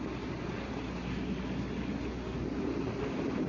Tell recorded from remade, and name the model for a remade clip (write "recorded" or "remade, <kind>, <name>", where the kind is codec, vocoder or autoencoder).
recorded